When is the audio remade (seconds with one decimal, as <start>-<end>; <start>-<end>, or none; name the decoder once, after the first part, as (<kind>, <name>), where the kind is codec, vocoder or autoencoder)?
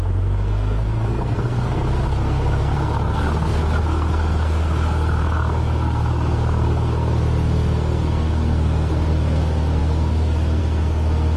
0.0-11.4 (codec, SNAC)